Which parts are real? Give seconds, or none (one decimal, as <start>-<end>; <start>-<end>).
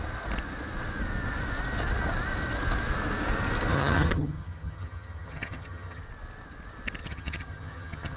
0.0-3.7; 6.0-7.0